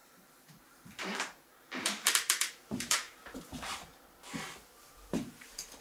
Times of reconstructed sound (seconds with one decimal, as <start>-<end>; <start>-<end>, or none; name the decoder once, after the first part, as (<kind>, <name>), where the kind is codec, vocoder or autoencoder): 0.0-3.9 (vocoder, BigVGAN v2); 4.8-5.8